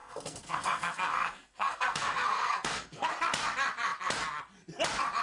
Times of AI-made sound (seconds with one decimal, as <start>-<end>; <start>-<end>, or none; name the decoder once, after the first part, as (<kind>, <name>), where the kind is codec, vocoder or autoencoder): 0.0-3.1 (codec, SNAC)